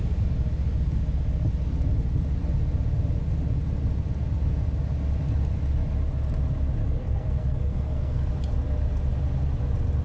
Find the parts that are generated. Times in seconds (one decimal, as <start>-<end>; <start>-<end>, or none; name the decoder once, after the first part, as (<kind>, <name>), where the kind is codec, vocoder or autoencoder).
6.8-8.3 (codec, SNAC)